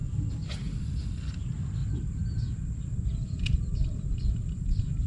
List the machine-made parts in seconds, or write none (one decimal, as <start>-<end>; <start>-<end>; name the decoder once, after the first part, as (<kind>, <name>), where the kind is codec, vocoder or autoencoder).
1.8-5.1 (vocoder, BigVGAN v2)